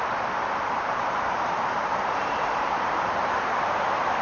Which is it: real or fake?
fake